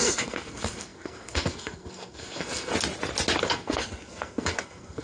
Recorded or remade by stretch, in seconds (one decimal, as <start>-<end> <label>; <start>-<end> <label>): 0.0-2.7 remade; 2.7-3.4 recorded; 3.4-5.0 remade